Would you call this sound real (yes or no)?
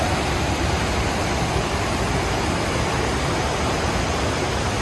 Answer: yes